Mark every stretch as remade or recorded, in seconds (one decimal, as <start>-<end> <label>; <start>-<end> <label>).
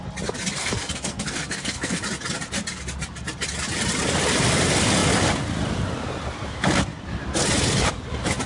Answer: 0.0-0.6 recorded; 0.6-2.0 remade; 2.0-8.5 recorded